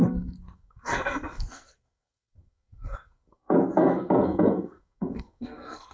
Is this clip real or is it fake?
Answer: fake